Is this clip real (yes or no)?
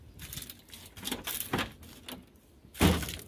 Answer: yes